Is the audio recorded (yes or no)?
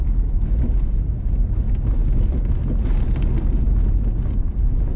yes